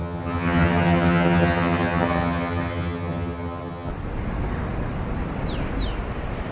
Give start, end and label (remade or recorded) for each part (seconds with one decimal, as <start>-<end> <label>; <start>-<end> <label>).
0.0-3.9 remade; 3.9-6.5 recorded